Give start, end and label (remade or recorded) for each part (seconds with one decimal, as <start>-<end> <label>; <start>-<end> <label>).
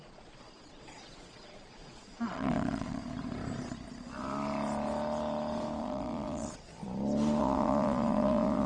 0.0-3.0 remade; 3.0-5.8 recorded; 5.8-6.7 remade; 6.7-7.4 recorded; 7.4-8.7 remade